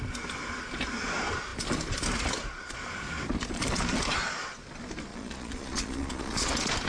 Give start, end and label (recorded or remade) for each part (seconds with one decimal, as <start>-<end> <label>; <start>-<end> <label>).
0.0-5.1 recorded; 5.1-6.5 remade; 6.5-6.9 recorded